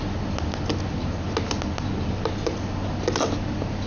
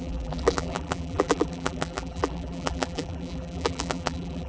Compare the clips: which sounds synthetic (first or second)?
second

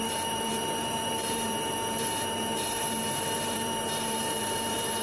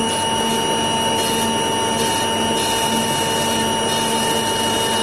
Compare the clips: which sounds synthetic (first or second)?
first